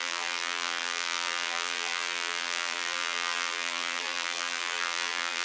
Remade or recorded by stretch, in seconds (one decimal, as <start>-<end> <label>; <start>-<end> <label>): 0.0-5.4 remade